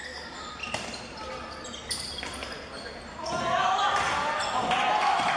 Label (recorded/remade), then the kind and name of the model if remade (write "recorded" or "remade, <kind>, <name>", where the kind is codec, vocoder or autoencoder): recorded